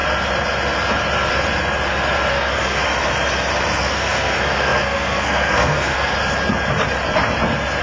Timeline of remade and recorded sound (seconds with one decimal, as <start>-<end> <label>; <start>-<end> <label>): 0.0-2.3 recorded; 2.3-2.8 remade; 2.8-3.8 recorded; 3.8-6.1 remade; 6.1-7.8 recorded